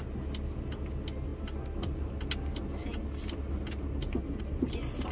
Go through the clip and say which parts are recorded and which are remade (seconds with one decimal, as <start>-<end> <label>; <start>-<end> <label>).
0.0-5.1 recorded